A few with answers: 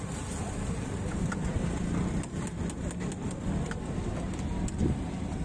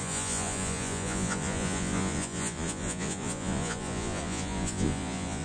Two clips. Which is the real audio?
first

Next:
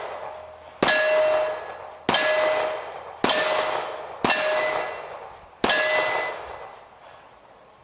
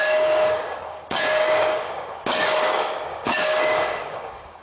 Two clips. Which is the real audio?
first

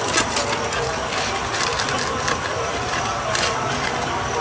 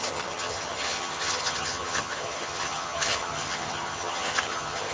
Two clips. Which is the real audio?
first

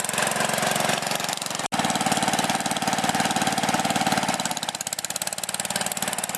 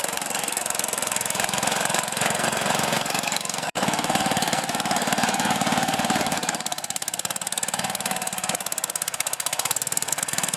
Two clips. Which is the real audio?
first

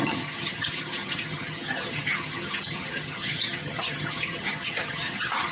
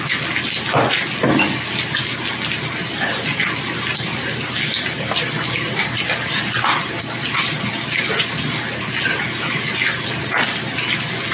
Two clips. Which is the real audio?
second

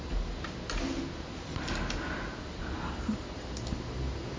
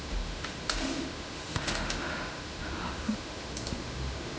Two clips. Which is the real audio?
first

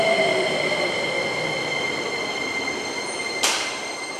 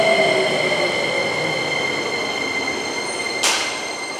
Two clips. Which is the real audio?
second